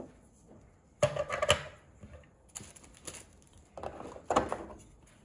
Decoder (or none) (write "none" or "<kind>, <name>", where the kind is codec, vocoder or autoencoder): none